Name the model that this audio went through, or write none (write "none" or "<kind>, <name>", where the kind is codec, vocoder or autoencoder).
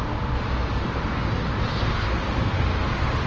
none